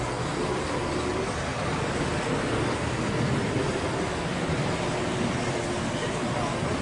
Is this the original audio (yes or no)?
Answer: yes